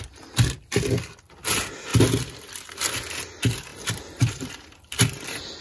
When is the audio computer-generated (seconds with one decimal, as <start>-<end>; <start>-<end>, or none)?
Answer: 3.7-5.6